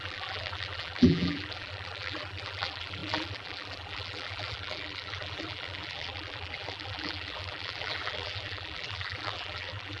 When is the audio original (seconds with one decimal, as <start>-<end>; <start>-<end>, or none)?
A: none